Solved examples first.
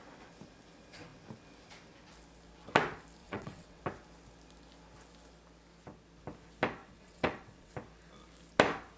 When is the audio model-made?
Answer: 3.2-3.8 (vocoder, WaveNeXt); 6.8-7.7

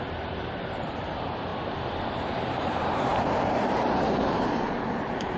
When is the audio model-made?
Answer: 0.0-1.5 (vocoder, BigVGAN v2); 2.1-5.4

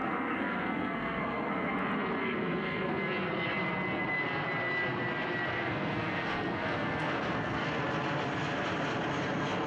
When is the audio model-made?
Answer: 0.0-1.7 (codec, SNAC); 2.2-3.0; 5.5-7.8

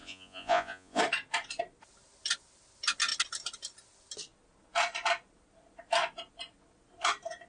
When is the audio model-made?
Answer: 0.0-1.0 (vocoder, Vocos)

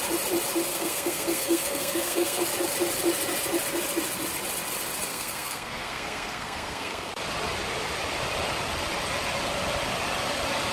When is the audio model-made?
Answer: 0.7-2.4 (codec, SNAC); 5.1-7.1

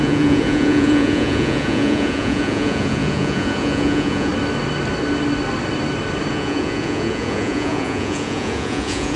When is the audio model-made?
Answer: 0.0-4.3 (vocoder, Vocos); 6.3-9.2

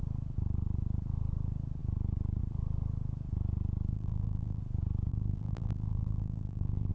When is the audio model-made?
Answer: 3.9-4.6 (vocoder, BigVGAN v2); 5.1-6.9

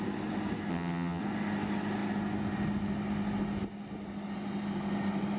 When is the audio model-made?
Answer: 0.7-1.2 (vocoder, HiFi-GAN)